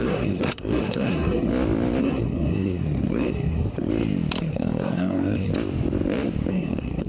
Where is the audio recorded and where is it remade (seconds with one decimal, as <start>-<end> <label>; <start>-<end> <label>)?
0.0-1.5 remade; 1.5-2.0 recorded; 2.0-3.9 remade; 3.9-4.4 recorded; 4.4-5.5 remade; 5.5-6.5 recorded; 6.5-7.1 remade